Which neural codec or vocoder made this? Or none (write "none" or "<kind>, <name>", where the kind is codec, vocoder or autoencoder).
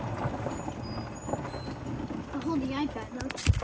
none